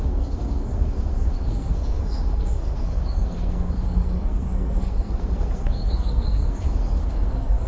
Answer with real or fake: fake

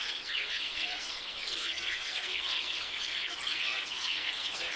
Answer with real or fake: fake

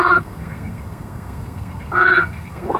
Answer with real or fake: fake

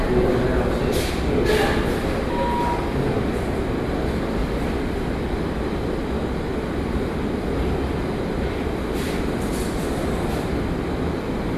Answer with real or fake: real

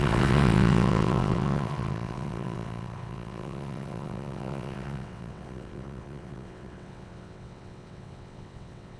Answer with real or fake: fake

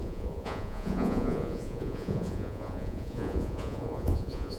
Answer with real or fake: fake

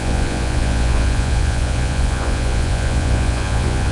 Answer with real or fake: fake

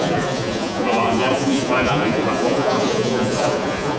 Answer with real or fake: fake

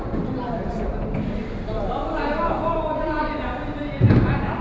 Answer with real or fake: real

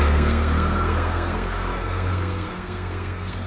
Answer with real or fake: fake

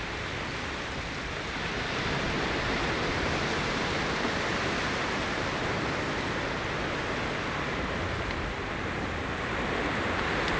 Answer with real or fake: real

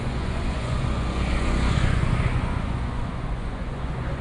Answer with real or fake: fake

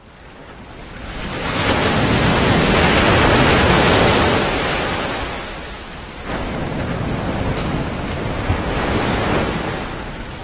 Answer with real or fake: fake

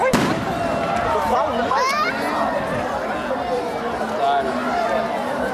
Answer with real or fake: real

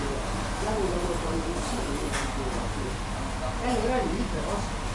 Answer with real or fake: real